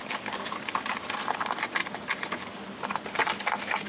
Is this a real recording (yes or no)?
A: yes